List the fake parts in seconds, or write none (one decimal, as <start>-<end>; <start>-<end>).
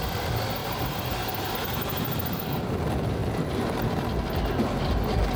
0.6-2.7